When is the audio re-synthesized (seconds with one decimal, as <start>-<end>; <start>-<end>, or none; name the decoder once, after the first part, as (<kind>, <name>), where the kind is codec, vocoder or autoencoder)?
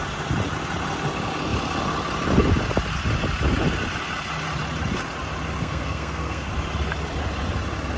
5.6-6.5 (codec, SNAC)